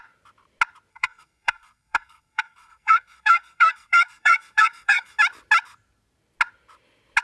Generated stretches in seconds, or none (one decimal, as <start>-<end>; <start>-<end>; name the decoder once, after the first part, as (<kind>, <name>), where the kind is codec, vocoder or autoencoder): 0.9-5.2 (codec, SNAC)